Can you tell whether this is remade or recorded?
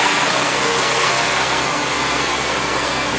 remade